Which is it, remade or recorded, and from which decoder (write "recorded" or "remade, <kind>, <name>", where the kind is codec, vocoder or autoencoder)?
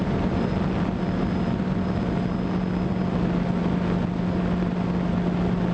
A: recorded